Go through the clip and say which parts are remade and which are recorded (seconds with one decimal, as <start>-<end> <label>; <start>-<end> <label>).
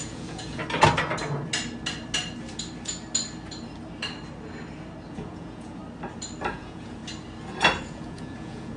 0.0-0.6 remade; 0.6-5.1 recorded; 5.1-5.8 remade; 5.8-6.5 recorded; 6.5-7.0 remade; 7.0-7.8 recorded; 7.8-8.8 remade